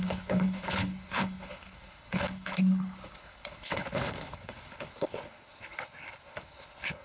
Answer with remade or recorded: remade